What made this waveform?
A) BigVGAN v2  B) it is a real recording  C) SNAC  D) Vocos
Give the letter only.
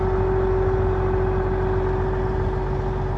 B